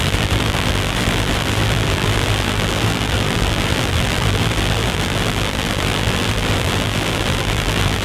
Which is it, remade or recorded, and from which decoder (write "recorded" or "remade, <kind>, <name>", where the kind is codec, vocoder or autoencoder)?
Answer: remade, vocoder, BigVGAN v2